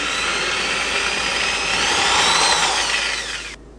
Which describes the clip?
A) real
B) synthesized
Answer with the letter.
A